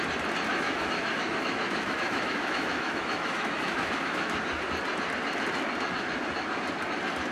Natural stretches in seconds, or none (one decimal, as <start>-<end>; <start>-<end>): 0.0-0.5; 4.4-7.3